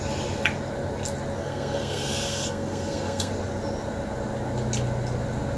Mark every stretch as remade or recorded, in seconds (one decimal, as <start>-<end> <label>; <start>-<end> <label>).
0.0-1.4 recorded; 1.4-3.3 remade; 3.3-5.6 recorded

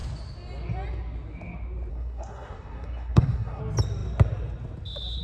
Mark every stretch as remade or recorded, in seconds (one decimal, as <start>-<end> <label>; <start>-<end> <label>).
0.0-1.9 recorded; 1.9-3.6 remade; 3.6-5.2 recorded